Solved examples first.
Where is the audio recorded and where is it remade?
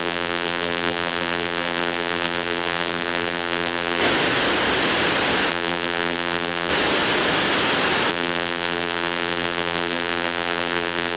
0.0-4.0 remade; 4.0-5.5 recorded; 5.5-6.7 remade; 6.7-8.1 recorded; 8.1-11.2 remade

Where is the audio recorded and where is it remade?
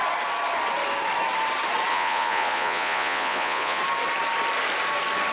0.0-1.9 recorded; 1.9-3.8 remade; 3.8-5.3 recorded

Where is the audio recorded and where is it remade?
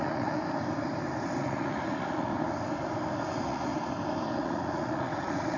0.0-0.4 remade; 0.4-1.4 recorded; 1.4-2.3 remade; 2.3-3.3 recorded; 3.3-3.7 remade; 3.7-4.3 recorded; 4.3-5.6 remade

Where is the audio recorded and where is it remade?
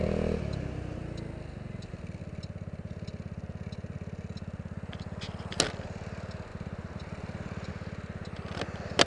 0.0-6.5 recorded; 6.5-7.7 remade; 7.7-9.1 recorded